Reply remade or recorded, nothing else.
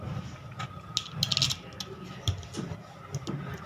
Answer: recorded